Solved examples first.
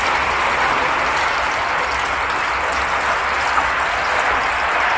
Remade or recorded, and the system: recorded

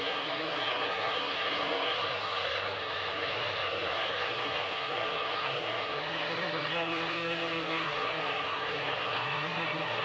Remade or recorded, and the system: remade, codec, SNAC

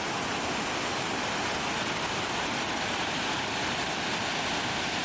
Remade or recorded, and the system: recorded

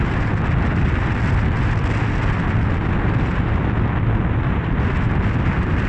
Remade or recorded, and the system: recorded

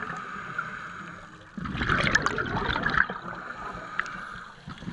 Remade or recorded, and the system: recorded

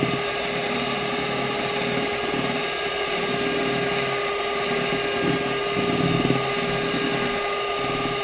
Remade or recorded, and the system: recorded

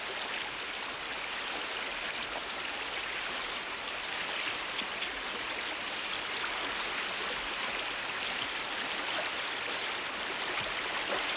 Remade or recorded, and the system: recorded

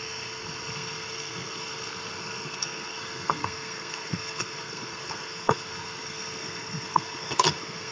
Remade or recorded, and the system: remade, codec, SNAC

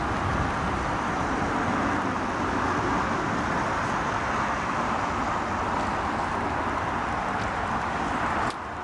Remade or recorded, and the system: recorded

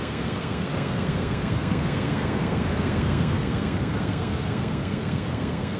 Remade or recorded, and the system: remade, codec, SNAC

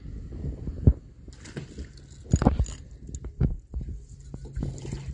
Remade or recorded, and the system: recorded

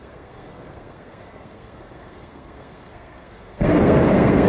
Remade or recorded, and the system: remade, codec, SNAC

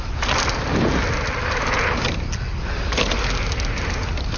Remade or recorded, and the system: recorded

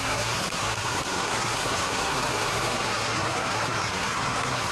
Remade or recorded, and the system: remade, codec, SNAC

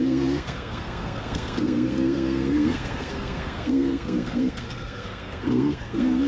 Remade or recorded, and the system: remade, codec, SNAC